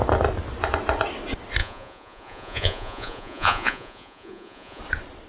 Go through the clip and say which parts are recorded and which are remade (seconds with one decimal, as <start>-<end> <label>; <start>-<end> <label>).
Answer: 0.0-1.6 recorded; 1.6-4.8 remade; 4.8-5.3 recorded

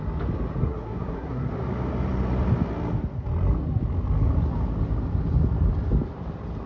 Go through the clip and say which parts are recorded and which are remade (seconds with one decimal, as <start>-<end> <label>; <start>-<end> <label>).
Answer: 0.0-0.6 recorded; 0.6-1.5 remade; 1.5-6.7 recorded

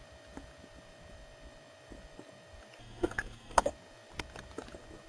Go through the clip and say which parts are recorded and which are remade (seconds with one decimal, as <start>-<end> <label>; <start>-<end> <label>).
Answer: 0.0-2.8 recorded; 2.8-3.7 remade; 3.7-5.1 recorded

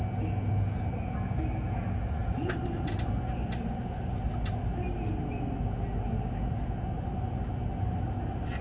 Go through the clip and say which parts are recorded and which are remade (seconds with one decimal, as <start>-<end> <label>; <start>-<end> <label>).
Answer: 0.0-8.6 recorded

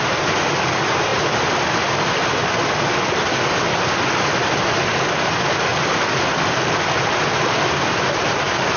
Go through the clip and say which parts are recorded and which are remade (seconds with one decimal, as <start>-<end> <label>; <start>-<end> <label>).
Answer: 0.0-8.8 recorded

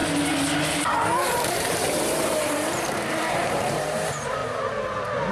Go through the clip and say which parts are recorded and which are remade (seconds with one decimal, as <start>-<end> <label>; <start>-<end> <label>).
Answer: 0.0-0.6 recorded; 0.6-4.4 remade; 4.4-5.3 recorded

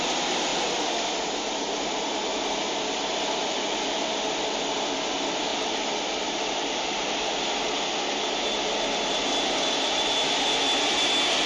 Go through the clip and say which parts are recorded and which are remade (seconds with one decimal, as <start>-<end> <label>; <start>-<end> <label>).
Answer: 0.0-3.4 recorded; 3.4-4.1 remade; 4.1-5.5 recorded; 5.5-7.2 remade; 7.2-11.5 recorded

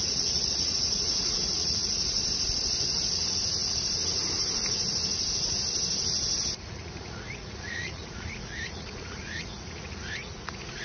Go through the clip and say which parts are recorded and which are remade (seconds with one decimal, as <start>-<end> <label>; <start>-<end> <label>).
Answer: 0.0-2.2 remade; 2.2-6.6 recorded; 6.6-10.8 remade